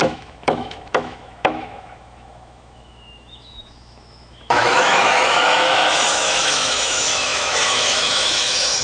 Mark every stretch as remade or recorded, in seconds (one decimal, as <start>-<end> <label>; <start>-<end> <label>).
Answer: 0.0-8.8 remade